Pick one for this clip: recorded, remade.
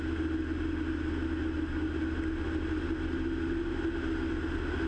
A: recorded